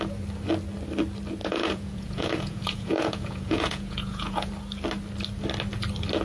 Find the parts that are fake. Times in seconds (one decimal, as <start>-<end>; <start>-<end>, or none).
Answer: 1.4-4.5

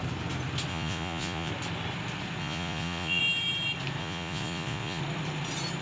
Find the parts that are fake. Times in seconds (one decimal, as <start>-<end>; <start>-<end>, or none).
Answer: 0.7-1.5; 2.4-3.2; 4.0-5.0